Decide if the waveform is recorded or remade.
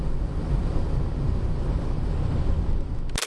recorded